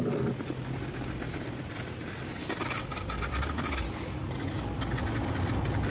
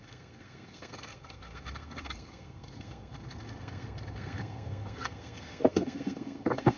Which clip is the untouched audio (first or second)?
first